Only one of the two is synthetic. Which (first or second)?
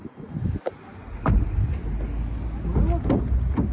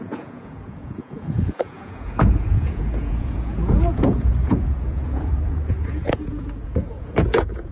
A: second